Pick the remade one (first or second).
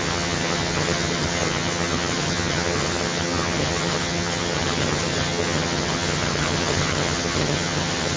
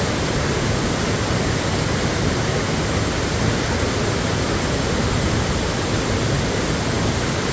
first